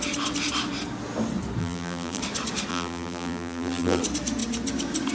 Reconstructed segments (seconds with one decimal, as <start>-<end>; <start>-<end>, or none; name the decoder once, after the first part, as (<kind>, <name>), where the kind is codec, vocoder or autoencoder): 1.6-2.2 (vocoder, BigVGAN v2); 2.7-4.0